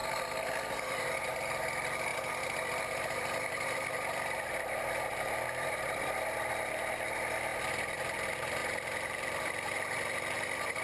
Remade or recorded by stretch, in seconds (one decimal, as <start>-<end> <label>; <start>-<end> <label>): 0.0-0.5 remade; 0.5-2.1 recorded; 2.1-6.9 remade; 6.9-7.5 recorded; 7.5-8.0 remade; 8.0-8.6 recorded; 8.6-9.4 remade; 9.4-10.8 recorded